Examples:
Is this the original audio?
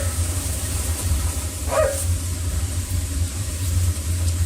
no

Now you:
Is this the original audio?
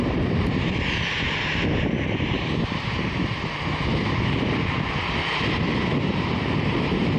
no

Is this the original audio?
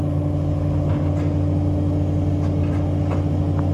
yes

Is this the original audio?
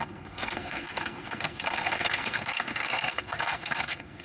no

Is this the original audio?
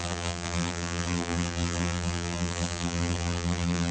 no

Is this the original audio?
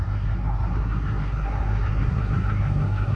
no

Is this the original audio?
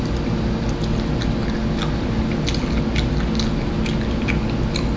yes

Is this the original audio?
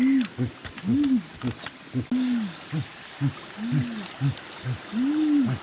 yes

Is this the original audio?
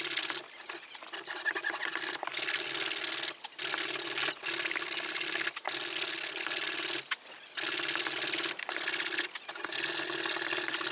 yes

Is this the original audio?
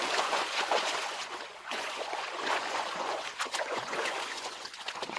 no